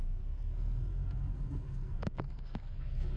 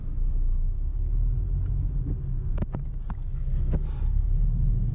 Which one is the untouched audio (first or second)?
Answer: second